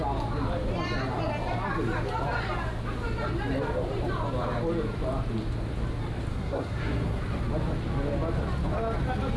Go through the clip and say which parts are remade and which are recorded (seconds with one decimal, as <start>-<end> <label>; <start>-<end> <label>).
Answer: 0.0-6.3 recorded; 6.3-7.2 remade; 7.2-9.4 recorded